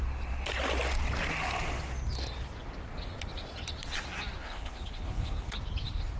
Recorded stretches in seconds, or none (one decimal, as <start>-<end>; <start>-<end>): 0.0-4.4; 5.5-6.2

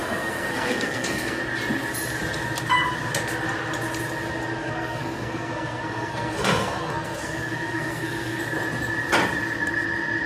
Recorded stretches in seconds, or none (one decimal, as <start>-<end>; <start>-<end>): 1.4-4.6; 8.4-10.3

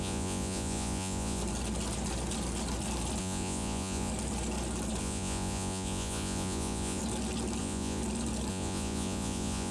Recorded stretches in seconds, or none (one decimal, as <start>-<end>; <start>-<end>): 1.4-3.2; 4.1-5.0; 7.0-7.6; 8.0-8.5

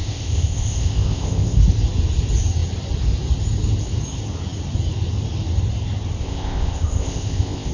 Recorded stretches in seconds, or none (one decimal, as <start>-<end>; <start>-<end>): 1.6-6.2